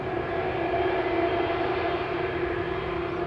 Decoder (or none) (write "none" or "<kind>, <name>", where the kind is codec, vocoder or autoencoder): none